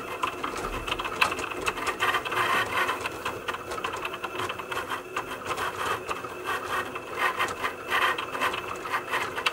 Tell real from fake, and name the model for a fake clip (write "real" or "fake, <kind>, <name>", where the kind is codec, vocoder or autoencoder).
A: real